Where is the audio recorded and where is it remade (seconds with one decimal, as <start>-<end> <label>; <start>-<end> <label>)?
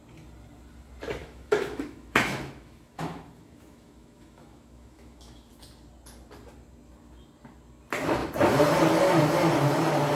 0.0-1.2 recorded; 1.2-5.5 remade; 5.5-10.2 recorded